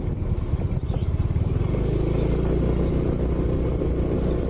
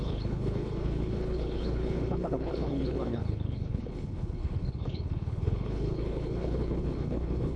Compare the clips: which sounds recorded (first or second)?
first